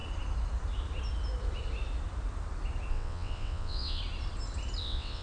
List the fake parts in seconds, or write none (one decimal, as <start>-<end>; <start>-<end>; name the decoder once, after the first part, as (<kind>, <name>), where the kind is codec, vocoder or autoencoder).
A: 2.9-4.0 (vocoder, WaveNeXt); 4.8-5.2